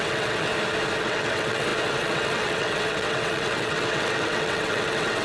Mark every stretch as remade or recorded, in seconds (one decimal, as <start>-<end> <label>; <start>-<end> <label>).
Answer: 0.0-0.5 remade; 0.5-1.0 recorded; 1.0-5.2 remade